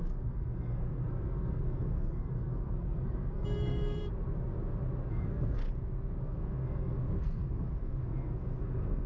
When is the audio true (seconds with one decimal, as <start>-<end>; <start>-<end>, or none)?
4.0-5.1; 5.6-6.2